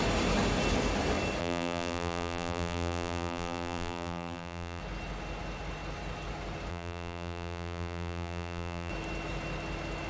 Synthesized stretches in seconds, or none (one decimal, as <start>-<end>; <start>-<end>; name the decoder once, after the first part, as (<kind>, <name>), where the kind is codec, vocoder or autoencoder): 1.4-4.8 (vocoder, BigVGAN v2); 6.7-8.9